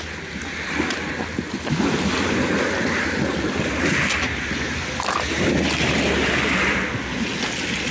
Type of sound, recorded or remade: recorded